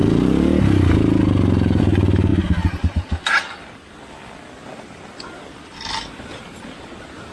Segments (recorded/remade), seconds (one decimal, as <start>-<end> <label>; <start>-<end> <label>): 0.0-7.3 recorded

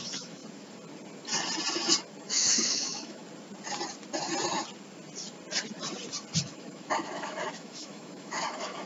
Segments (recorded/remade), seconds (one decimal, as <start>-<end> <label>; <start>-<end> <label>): 0.0-0.4 remade; 0.4-2.2 recorded; 2.2-3.2 remade; 3.2-6.4 recorded; 6.4-8.9 remade

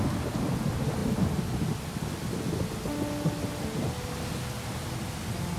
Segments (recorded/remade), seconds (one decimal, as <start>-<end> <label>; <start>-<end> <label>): 0.0-5.6 recorded

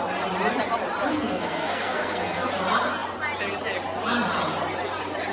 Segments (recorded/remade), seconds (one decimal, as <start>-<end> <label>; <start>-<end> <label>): 0.0-1.1 recorded; 1.1-2.5 remade; 2.5-5.3 recorded

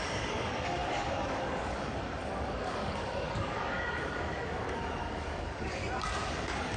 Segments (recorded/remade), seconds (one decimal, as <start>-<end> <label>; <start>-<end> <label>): 0.0-5.8 remade; 5.8-6.3 recorded; 6.3-6.8 remade